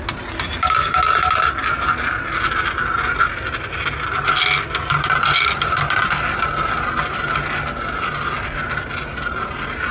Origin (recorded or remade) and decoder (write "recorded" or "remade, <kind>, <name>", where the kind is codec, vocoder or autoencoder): recorded